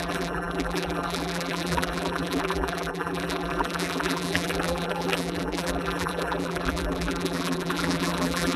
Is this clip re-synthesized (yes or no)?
yes